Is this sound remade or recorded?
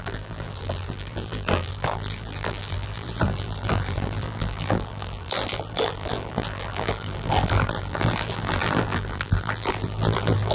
remade